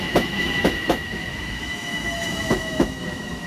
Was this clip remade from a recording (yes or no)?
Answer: yes